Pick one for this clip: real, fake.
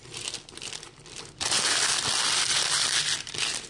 fake